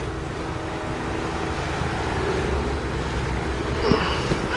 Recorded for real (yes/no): yes